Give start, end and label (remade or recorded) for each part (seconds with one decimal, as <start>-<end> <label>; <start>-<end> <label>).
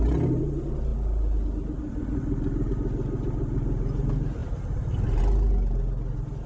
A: 0.0-4.4 recorded; 4.4-5.2 remade; 5.2-6.5 recorded